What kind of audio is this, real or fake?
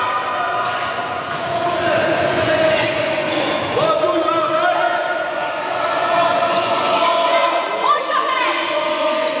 fake